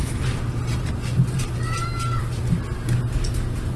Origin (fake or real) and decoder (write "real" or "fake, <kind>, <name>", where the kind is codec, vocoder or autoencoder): real